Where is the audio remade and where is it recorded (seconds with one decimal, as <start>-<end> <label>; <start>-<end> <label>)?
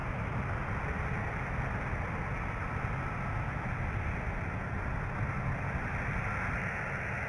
0.0-7.3 recorded